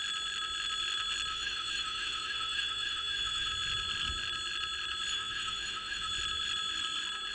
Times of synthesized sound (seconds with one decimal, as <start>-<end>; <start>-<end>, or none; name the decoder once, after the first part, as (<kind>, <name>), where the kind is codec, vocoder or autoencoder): 1.3-3.5 (autoencoder, DAC-VAE); 5.1-6.1